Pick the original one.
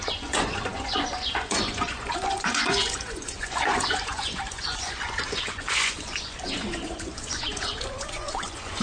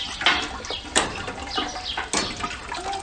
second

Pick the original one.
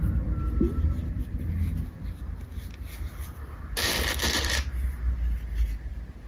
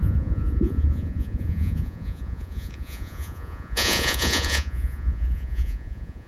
first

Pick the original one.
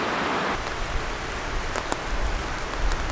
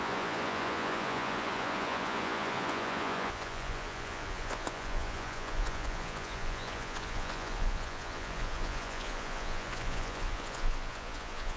first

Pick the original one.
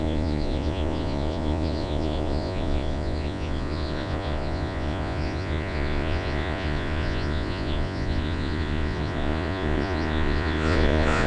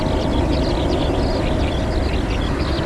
second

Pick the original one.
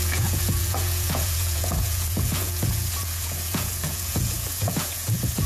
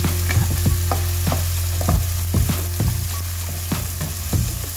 second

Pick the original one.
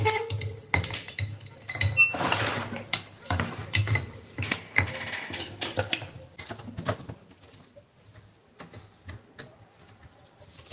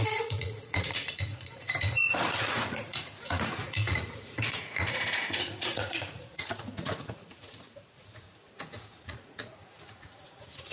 first